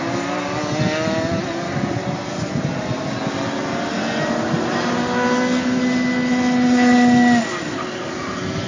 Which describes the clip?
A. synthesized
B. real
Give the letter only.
B